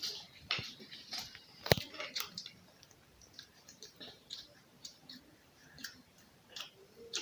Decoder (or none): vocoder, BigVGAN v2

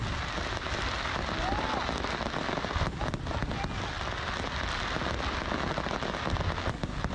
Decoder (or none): none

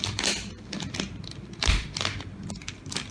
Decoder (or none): vocoder, BigVGAN v2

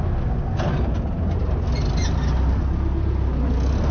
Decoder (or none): none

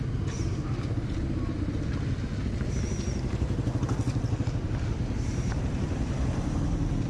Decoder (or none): none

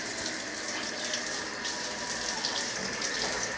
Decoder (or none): vocoder, BigVGAN v2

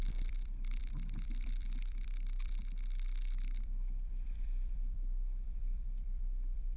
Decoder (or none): vocoder, BigVGAN v2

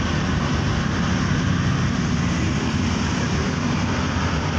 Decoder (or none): none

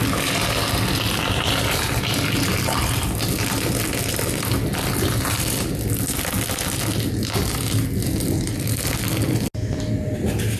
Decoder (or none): none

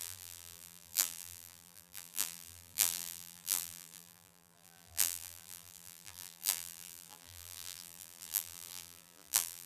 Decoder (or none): vocoder, BigVGAN v2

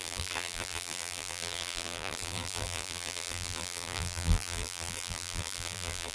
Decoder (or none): vocoder, BigVGAN v2